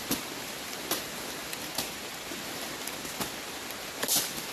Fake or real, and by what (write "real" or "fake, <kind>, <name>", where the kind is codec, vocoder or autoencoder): real